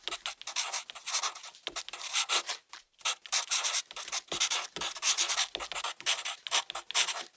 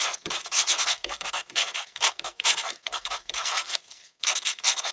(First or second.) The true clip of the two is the first